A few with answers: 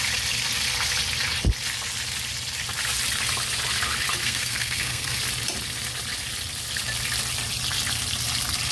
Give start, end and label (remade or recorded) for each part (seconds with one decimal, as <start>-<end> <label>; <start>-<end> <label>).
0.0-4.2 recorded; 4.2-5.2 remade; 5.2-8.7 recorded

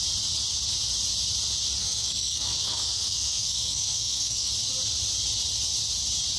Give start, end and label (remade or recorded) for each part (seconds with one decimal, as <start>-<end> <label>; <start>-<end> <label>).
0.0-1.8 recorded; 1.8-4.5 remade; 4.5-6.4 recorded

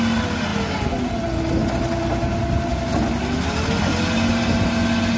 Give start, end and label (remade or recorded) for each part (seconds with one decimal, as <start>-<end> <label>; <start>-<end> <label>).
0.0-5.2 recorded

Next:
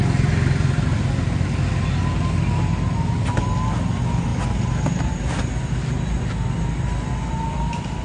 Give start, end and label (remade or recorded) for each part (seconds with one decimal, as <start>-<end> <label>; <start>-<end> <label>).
0.0-8.0 recorded